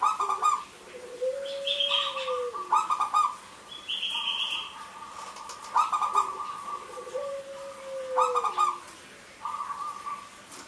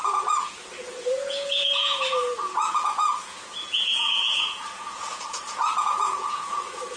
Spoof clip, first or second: second